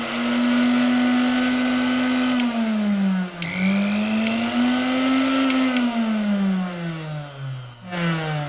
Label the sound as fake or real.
real